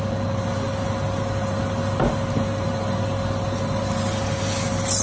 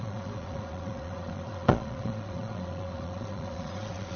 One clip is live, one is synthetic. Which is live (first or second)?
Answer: first